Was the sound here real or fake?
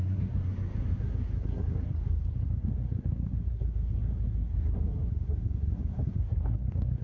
fake